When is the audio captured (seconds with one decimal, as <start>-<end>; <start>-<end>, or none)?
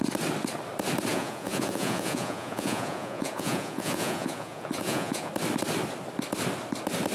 0.0-1.1; 5.3-7.1